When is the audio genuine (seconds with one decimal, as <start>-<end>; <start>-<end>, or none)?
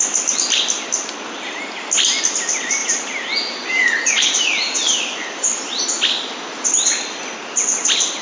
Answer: 0.0-2.8; 5.8-8.2